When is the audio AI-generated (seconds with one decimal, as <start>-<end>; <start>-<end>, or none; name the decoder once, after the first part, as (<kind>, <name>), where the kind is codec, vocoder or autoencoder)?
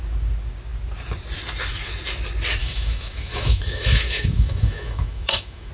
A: 2.6-5.7 (autoencoder, DAC-VAE)